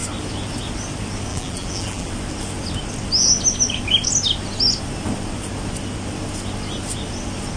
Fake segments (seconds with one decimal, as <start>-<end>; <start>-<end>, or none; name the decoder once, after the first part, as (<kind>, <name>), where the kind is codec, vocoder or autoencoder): 1.3-2.1 (vocoder, BigVGAN v2)